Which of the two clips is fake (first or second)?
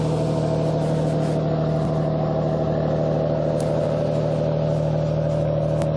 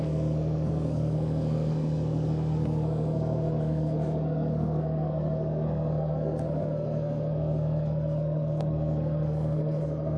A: second